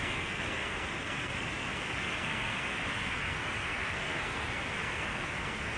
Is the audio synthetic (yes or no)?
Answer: yes